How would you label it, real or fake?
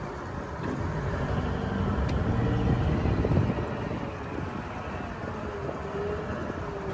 real